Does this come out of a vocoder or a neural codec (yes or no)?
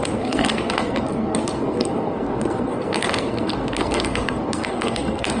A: yes